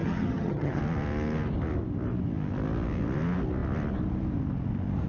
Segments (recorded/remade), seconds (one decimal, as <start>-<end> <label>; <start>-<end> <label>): 0.0-0.8 remade; 0.8-5.1 recorded

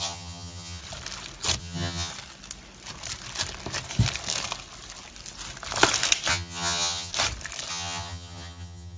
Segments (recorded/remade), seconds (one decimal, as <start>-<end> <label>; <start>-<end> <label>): 0.0-0.8 remade; 0.8-1.6 recorded; 1.6-2.1 remade; 2.1-6.3 recorded; 6.3-7.1 remade; 7.1-7.7 recorded; 7.7-9.0 remade

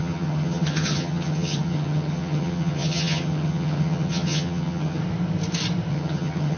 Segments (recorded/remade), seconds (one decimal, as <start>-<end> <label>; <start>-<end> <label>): 0.0-5.0 remade; 5.0-5.9 recorded; 5.9-6.6 remade